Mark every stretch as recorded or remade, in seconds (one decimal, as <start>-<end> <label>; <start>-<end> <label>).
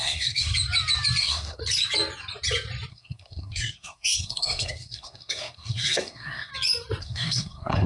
0.0-0.5 remade; 0.5-1.2 recorded; 1.2-1.6 remade; 1.6-2.9 recorded; 2.9-6.5 remade; 6.5-7.0 recorded; 7.0-7.9 remade